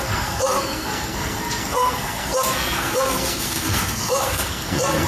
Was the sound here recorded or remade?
remade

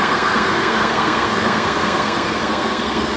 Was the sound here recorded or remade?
remade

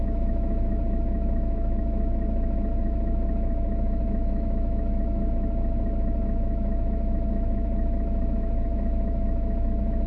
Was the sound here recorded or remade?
remade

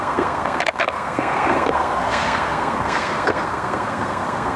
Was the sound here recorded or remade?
remade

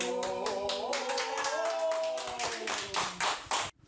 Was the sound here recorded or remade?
remade